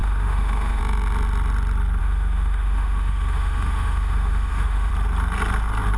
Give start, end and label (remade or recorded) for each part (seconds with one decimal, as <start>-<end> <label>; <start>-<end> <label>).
0.0-0.8 remade; 0.8-2.0 recorded; 2.0-4.9 remade; 4.9-6.0 recorded